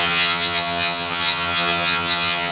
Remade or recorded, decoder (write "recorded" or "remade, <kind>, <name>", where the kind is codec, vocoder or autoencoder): remade, vocoder, HiFi-GAN